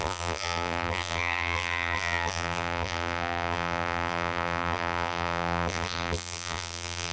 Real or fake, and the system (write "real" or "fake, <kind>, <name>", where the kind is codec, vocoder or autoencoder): fake, vocoder, BigVGAN v2